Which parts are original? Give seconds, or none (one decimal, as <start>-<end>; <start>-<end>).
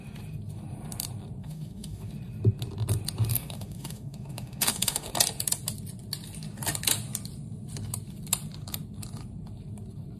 0.0-1.4; 2.1-3.3; 5.1-10.2